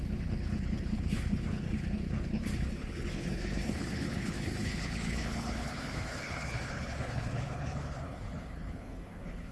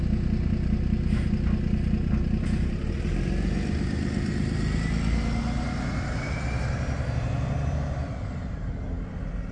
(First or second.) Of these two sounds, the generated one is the first